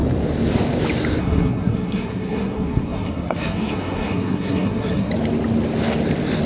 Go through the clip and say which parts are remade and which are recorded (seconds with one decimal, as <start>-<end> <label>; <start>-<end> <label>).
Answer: 0.0-1.2 recorded; 1.2-5.1 remade; 5.1-6.5 recorded